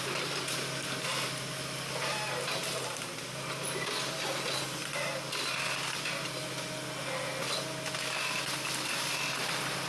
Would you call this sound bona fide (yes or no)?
yes